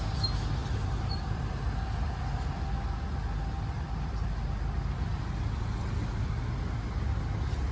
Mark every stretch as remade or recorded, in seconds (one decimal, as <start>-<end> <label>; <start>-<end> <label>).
0.0-0.6 recorded; 0.6-1.7 remade; 1.7-7.7 recorded